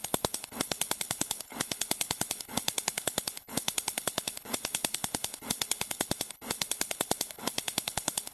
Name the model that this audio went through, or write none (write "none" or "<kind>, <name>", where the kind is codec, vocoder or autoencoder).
codec, HILCodec